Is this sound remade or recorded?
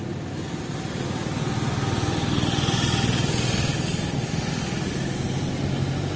recorded